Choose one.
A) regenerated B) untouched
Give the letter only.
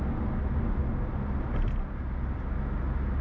B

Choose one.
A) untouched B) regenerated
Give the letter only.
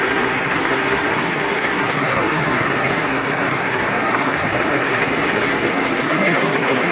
B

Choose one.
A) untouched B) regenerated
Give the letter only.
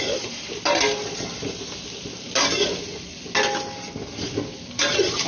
A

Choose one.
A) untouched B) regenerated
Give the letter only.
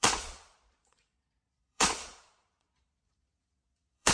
B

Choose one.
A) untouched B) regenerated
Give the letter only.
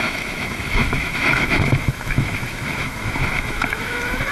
B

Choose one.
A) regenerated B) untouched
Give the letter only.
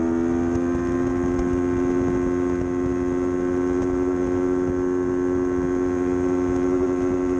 B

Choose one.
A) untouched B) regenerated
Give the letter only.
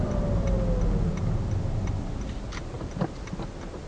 A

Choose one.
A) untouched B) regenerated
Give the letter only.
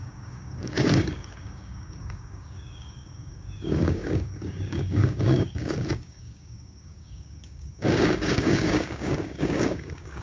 B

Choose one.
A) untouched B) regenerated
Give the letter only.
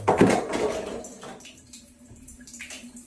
B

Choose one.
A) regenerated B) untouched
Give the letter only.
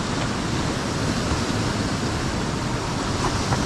A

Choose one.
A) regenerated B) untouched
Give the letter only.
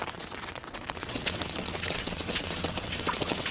A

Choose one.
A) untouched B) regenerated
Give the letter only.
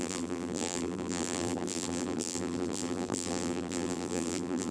B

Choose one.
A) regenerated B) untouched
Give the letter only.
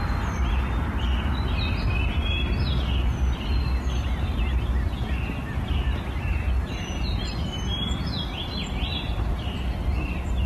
B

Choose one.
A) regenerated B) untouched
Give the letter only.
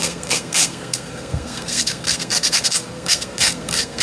A